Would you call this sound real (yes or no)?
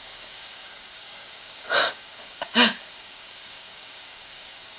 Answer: no